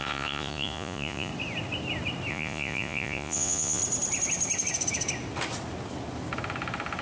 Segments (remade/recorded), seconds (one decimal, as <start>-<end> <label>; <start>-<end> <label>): 0.0-1.3 remade; 1.3-2.3 recorded; 2.3-3.8 remade; 3.8-7.0 recorded